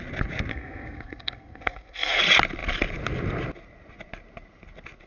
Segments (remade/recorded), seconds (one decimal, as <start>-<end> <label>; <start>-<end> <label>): 0.0-0.5 recorded; 0.5-2.2 remade; 2.2-5.1 recorded